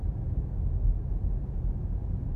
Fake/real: real